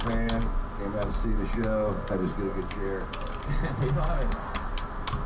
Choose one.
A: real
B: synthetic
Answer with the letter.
A